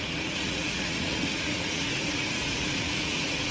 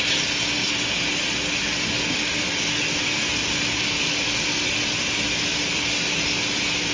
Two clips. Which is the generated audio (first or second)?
first